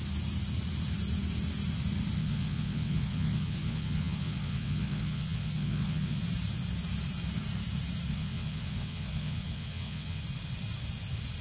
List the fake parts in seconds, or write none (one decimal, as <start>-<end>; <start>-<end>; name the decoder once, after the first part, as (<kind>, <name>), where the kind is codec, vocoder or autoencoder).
2.2-6.2 (vocoder, WaveNeXt); 8.1-10.2